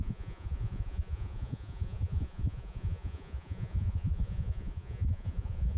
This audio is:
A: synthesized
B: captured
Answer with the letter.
A